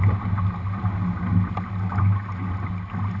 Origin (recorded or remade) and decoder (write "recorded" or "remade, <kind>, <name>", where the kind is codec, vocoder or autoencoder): recorded